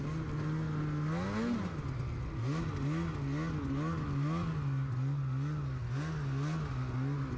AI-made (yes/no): no